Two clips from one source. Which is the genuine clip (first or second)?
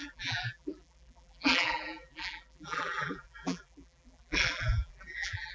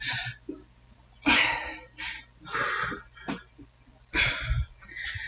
second